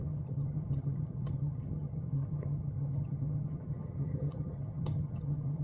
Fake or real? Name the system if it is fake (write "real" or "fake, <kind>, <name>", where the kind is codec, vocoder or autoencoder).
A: fake, vocoder, HiFi-GAN